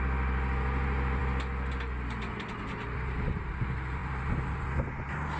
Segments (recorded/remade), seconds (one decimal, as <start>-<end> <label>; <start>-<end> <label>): 0.0-5.4 recorded